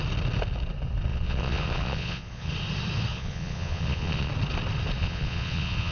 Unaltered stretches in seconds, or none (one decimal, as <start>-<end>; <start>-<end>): 0.0-1.1; 2.5-3.1; 4.3-5.0